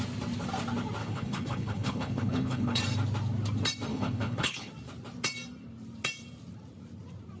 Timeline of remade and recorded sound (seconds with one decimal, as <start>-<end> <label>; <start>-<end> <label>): 0.0-1.0 recorded; 1.0-2.8 remade; 2.8-3.9 recorded; 3.9-4.7 remade; 4.7-7.4 recorded